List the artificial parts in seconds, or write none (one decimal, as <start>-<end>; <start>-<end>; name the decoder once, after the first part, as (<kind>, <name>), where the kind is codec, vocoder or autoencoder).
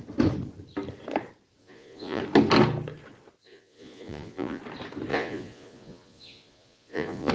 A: 1.6-2.2 (vocoder, Vocos); 3.4-4.6; 5.1-7.3